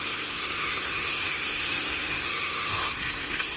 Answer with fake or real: fake